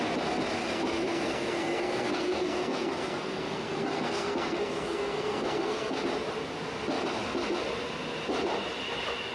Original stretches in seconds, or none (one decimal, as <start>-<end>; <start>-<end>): 0.0-0.7; 6.0-9.3